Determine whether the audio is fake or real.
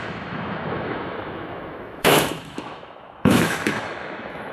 fake